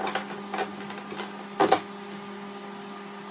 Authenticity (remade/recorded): recorded